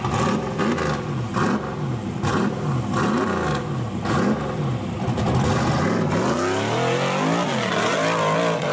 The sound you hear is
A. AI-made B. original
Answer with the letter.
B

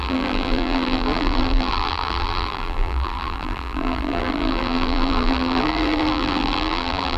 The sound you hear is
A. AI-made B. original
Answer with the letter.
A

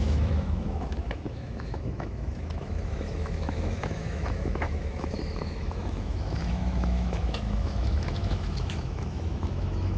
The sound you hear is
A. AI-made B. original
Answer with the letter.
A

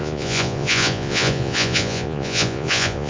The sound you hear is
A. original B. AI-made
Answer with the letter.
B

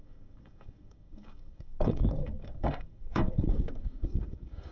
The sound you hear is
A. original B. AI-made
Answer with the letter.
B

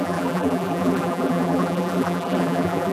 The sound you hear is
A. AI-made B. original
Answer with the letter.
A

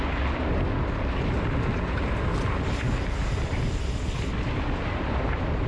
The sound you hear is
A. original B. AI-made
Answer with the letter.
A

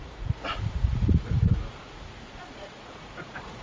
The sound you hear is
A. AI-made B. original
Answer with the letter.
A